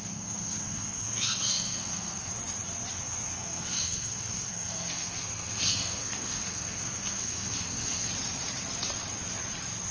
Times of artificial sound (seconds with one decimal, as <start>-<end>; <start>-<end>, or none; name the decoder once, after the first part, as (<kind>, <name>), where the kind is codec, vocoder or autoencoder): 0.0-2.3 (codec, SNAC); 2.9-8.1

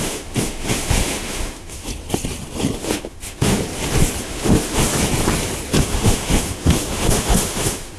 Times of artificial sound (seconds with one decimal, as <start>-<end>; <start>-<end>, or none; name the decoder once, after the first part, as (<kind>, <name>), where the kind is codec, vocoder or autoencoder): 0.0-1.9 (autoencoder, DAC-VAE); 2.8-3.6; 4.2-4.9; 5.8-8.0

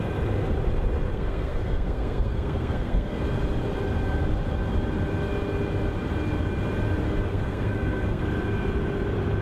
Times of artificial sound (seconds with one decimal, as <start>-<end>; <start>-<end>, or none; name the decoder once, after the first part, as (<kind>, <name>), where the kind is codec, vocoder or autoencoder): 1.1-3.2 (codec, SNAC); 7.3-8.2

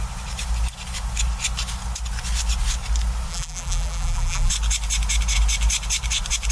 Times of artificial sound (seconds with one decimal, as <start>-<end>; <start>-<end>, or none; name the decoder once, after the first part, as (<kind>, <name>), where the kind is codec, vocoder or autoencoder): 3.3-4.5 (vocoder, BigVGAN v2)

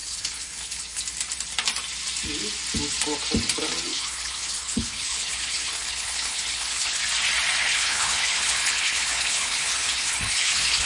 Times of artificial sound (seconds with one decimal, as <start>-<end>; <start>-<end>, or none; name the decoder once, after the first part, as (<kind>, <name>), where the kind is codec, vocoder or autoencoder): 0.0-1.0 (codec, HILCodec); 3.9-7.0; 7.6-10.9

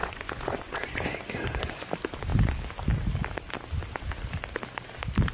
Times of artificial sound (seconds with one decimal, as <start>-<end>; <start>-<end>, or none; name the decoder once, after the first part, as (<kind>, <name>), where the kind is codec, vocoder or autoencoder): 0.0-1.9 (vocoder, Vocos)

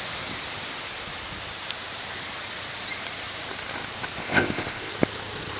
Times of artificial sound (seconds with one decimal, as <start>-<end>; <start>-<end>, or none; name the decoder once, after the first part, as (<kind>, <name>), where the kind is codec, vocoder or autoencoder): 4.2-4.9 (codec, ZipCodec)